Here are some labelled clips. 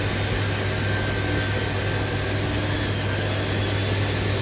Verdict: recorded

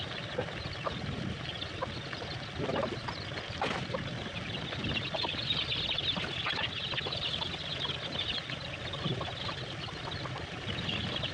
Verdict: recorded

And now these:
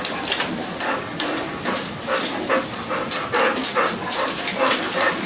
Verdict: recorded